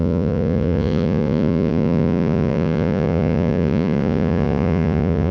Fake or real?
fake